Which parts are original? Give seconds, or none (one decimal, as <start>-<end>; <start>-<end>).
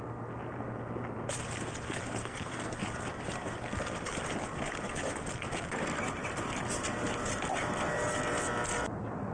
0.0-2.2; 2.8-9.3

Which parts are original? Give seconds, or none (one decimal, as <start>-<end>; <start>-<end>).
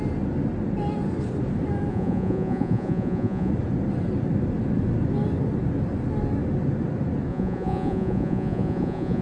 0.0-1.9; 3.5-7.3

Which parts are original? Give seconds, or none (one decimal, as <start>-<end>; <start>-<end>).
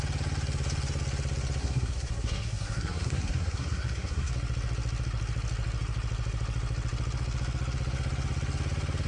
0.0-1.6; 4.3-9.1